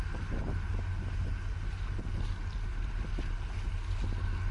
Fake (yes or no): no